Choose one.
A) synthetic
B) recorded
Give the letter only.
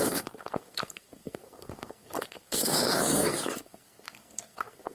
A